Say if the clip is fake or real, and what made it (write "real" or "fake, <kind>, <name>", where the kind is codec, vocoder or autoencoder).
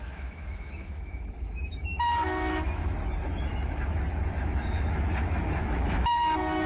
fake, autoencoder, DAC-VAE